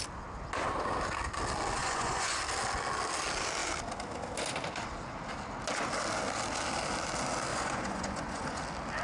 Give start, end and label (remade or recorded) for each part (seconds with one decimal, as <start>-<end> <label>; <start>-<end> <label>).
0.0-1.8 recorded; 1.8-2.4 remade; 2.4-7.5 recorded; 7.5-8.6 remade; 8.6-9.0 recorded